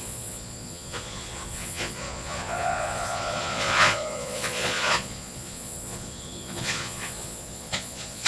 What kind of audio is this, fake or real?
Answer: fake